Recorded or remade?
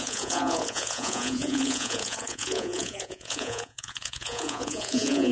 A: remade